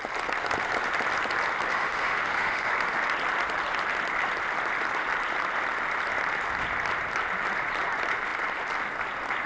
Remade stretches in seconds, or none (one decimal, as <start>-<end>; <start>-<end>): 1.7-2.7